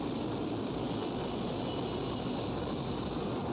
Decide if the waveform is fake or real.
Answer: real